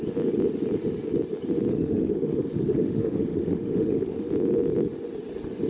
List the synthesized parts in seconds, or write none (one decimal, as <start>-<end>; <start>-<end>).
1.7-4.3